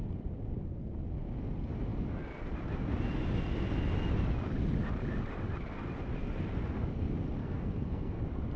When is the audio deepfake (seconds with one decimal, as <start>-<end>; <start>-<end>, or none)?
7.4-8.2